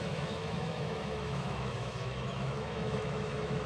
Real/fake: fake